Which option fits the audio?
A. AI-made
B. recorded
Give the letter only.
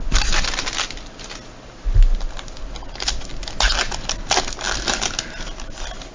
B